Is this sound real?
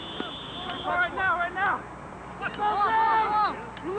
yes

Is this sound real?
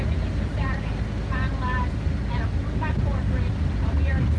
yes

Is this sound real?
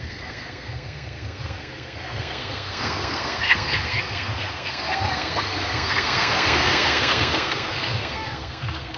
no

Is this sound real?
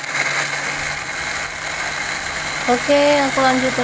yes